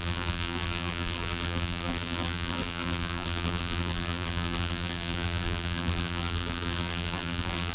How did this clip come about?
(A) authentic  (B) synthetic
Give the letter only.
B